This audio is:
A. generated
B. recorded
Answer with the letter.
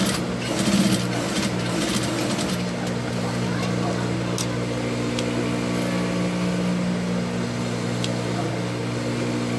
B